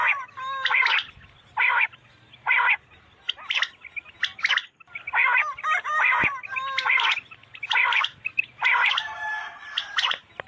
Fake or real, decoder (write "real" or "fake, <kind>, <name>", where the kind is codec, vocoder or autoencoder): real